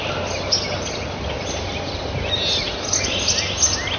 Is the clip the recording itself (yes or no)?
yes